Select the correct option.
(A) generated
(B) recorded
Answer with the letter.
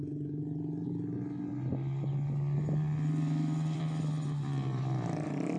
B